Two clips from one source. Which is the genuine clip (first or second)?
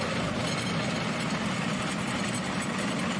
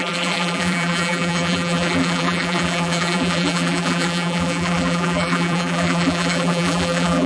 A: first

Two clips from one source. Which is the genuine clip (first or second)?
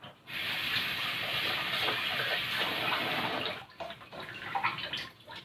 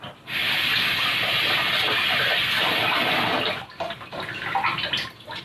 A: second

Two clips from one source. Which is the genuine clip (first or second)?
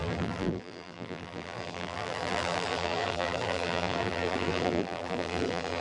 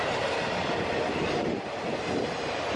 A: second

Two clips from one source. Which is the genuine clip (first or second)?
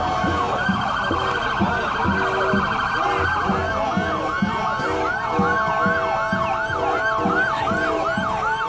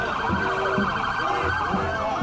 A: first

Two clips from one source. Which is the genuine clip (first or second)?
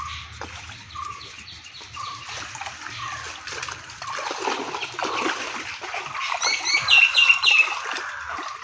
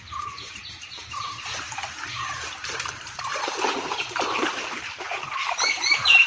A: first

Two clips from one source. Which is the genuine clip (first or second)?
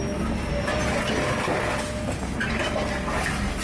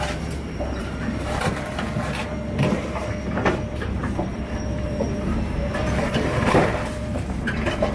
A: first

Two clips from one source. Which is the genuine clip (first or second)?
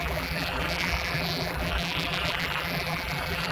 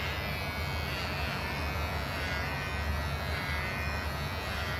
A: second